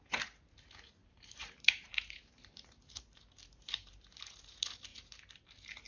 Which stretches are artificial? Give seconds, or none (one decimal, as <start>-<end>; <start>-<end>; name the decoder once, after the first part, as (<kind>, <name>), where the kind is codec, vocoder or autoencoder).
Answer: 1.0-4.2 (vocoder, BigVGAN v2); 4.9-5.5